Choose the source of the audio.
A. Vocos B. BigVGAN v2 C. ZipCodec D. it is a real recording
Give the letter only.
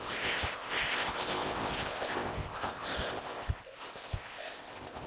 C